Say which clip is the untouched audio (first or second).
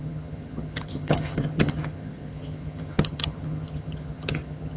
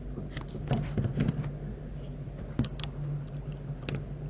second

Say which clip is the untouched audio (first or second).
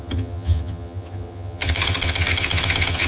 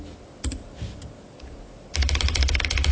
second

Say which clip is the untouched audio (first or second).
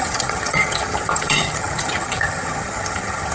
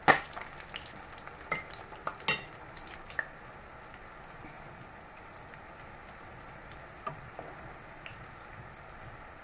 second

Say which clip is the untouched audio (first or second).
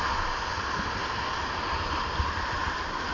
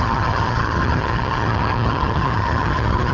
first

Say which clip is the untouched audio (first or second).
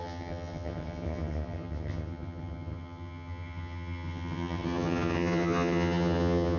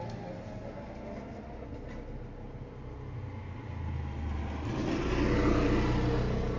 second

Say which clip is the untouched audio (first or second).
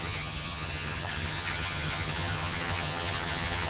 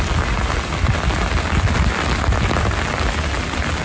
second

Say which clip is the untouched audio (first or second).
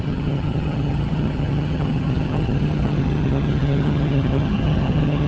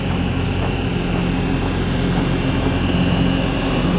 second